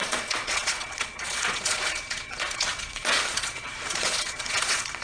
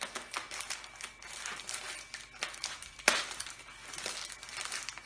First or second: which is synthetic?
first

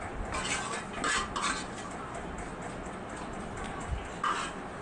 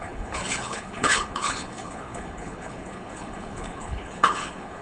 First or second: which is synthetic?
second